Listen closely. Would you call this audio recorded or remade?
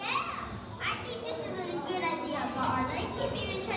recorded